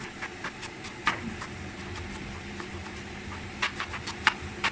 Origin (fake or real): real